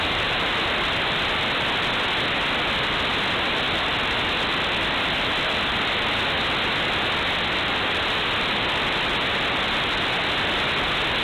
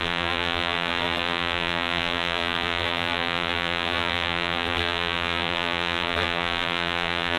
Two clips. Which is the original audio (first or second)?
first